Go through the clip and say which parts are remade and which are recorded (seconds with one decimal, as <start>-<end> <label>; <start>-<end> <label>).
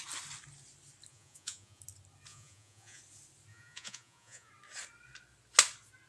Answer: 0.0-1.1 recorded; 1.1-1.8 remade; 1.8-2.3 recorded; 2.3-3.0 remade; 3.0-3.5 recorded; 3.5-4.5 remade; 4.5-6.1 recorded